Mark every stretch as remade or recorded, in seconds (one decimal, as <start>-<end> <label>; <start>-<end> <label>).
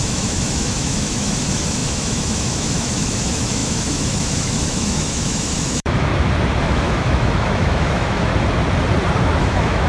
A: 0.0-6.1 remade; 6.1-6.6 recorded; 6.6-8.3 remade; 8.3-9.4 recorded; 9.4-9.9 remade